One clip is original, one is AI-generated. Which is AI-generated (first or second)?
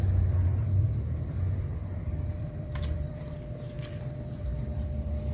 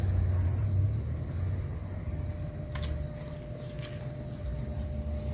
first